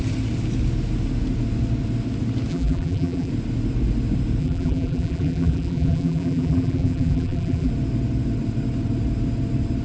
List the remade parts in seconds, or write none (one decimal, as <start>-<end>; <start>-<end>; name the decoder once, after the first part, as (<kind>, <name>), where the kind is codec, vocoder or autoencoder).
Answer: 2.5-3.3 (vocoder, BigVGAN v2); 4.4-7.7